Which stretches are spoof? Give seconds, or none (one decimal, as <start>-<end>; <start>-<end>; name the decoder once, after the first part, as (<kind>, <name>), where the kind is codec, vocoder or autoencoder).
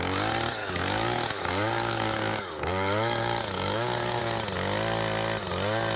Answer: 0.6-4.2 (codec, DAC)